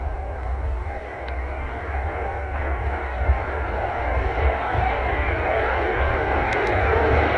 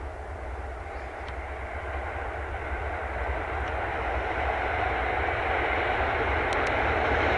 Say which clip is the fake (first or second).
first